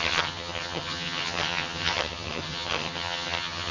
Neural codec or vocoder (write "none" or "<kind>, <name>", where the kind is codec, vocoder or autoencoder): vocoder, HiFi-GAN